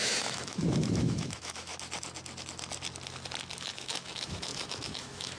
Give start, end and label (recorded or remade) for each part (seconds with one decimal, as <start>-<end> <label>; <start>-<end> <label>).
0.0-1.7 remade; 1.7-3.7 recorded; 3.7-5.4 remade